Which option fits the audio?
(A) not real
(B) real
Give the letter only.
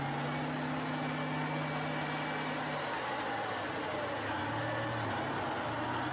B